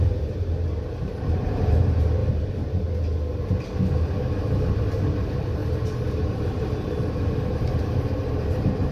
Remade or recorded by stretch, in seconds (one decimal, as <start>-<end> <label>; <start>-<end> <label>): 0.0-2.2 remade; 2.2-4.8 recorded; 4.8-5.6 remade; 5.6-6.3 recorded; 6.3-8.9 remade